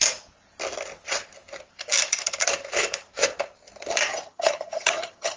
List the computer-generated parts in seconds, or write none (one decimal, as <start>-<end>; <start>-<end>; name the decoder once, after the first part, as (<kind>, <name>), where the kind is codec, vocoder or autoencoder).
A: 4.1-5.4 (vocoder, HiFi-GAN)